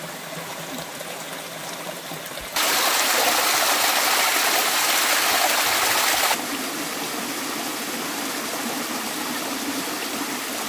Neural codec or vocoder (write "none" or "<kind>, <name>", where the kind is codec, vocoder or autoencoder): none